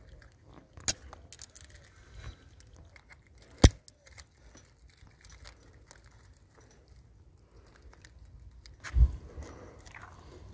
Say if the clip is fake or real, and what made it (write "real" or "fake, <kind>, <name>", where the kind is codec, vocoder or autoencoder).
real